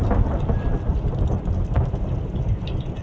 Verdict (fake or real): real